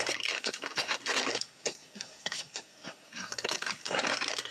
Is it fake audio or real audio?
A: fake